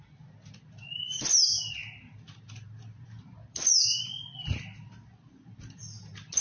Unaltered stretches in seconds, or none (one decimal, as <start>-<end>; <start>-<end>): 0.0-6.4